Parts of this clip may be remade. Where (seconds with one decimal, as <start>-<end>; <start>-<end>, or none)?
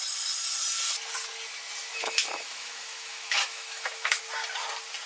1.9-4.2